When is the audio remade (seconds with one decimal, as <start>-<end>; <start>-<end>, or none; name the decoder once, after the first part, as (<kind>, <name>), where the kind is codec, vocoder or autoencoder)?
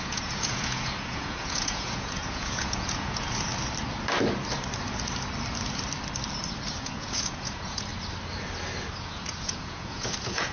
0.0-3.5 (vocoder, Vocos); 6.8-7.9; 8.9-10.5